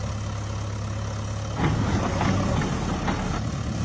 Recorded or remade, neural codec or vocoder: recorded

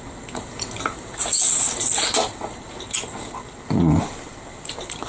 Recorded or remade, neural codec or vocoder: recorded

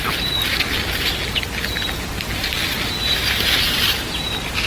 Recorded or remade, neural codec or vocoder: recorded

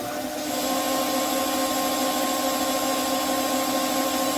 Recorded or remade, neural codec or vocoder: recorded